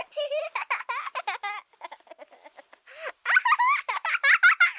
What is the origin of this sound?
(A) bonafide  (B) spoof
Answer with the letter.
A